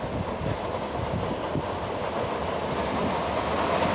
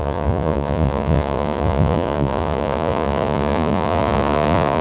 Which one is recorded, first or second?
first